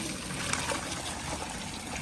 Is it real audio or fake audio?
real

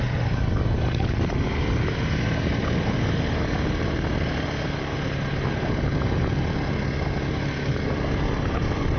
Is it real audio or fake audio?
real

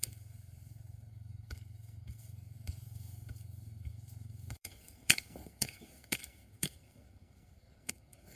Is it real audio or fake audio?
fake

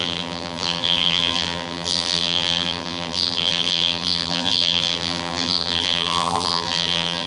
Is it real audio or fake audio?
fake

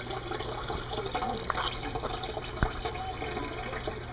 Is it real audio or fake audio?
real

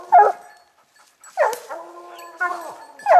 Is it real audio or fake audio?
real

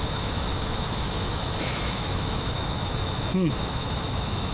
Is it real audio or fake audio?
fake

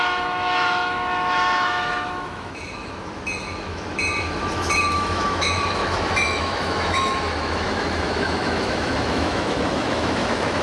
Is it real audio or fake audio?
fake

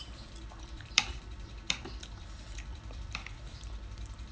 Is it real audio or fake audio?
fake